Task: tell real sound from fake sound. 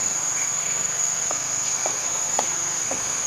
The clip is fake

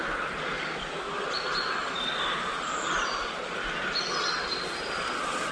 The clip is real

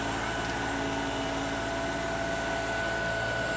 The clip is real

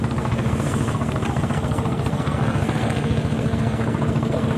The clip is fake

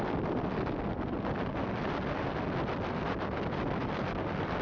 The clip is real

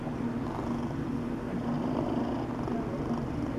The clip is real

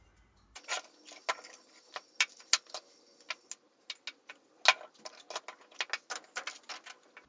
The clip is real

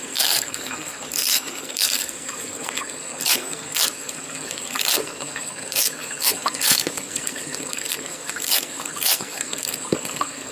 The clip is fake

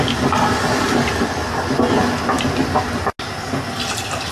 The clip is real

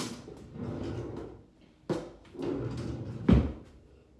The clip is real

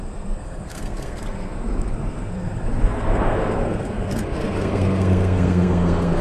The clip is fake